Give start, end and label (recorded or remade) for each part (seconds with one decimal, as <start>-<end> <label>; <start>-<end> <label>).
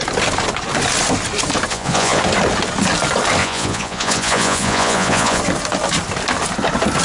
0.0-1.7 recorded; 1.7-2.2 remade; 2.2-3.4 recorded; 3.4-5.4 remade; 5.4-7.0 recorded